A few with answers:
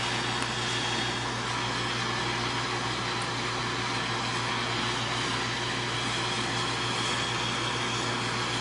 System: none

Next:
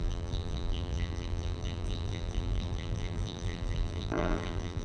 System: vocoder, BigVGAN v2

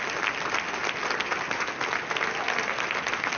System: none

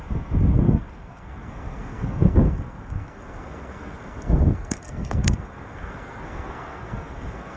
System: codec, SNAC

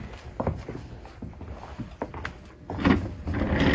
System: none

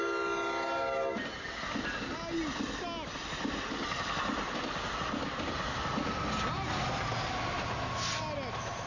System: none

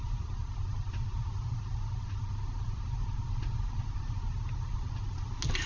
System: none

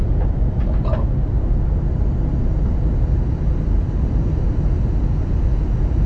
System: none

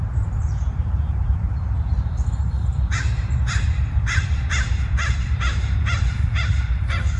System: vocoder, BigVGAN v2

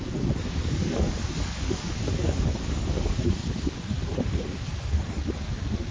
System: codec, DAC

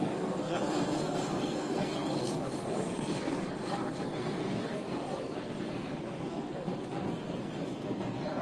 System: codec, SNAC